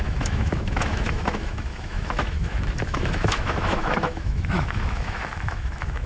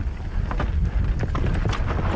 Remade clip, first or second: first